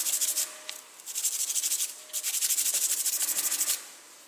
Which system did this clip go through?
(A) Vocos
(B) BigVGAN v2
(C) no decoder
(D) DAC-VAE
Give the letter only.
C